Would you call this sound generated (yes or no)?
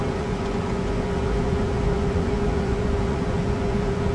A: yes